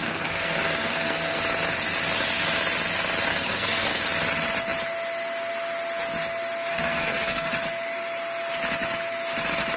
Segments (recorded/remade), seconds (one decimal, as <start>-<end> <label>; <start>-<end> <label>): 0.0-1.4 remade; 1.4-3.3 recorded; 3.3-4.0 remade; 4.0-6.7 recorded; 6.7-7.5 remade; 7.5-9.8 recorded

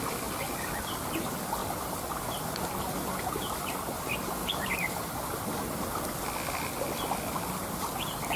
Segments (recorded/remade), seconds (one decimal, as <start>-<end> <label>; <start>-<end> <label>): 0.0-8.4 recorded

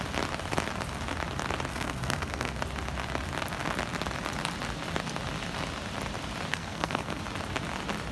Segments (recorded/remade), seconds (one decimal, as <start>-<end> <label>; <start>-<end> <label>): 0.0-1.7 recorded; 1.7-2.6 remade; 2.6-6.5 recorded; 6.5-7.2 remade; 7.2-8.1 recorded

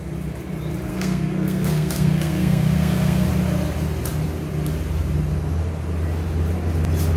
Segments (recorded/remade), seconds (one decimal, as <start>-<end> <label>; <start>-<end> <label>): 0.0-0.9 recorded; 0.9-3.3 remade; 3.3-7.2 recorded